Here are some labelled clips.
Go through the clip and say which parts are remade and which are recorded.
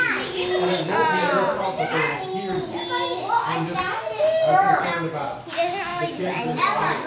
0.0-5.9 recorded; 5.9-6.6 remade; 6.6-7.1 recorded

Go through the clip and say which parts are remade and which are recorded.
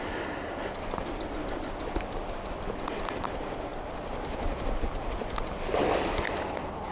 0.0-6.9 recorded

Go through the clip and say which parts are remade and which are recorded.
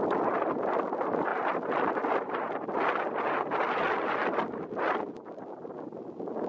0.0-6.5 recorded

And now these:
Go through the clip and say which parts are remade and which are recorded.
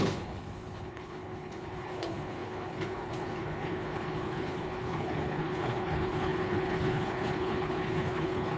0.0-8.6 remade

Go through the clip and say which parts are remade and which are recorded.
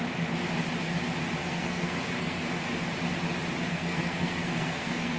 0.0-1.4 recorded; 1.4-2.4 remade; 2.4-3.7 recorded; 3.7-5.2 remade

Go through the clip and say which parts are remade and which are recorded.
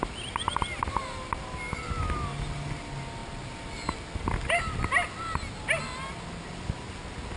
0.0-7.4 recorded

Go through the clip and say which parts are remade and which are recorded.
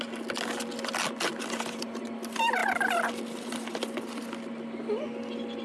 0.0-5.6 recorded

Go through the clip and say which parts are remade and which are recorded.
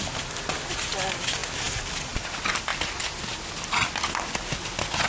0.0-5.1 recorded